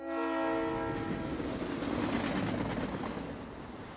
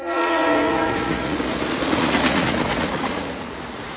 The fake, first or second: second